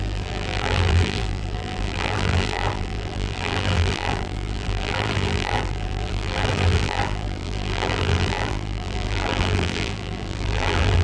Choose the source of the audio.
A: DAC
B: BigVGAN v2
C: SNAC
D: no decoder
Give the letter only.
B